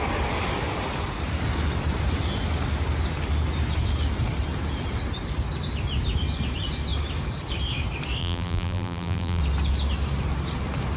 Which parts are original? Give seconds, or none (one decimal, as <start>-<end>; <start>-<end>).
0.0-8.2; 9.4-11.0

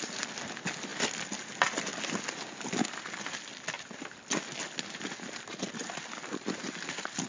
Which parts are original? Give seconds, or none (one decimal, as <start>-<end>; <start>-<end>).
0.0-7.3

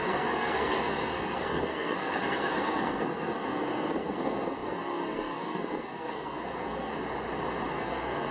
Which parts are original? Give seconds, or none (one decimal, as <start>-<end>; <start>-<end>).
6.9-7.7